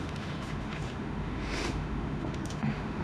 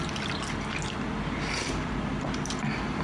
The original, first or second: second